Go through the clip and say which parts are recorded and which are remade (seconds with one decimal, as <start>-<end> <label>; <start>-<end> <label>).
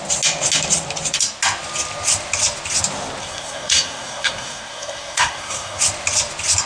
0.0-3.2 recorded; 3.2-5.8 remade; 5.8-6.7 recorded